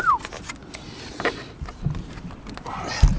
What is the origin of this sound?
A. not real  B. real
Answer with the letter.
B